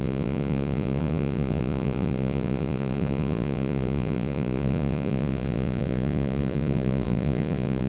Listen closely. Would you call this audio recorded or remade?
remade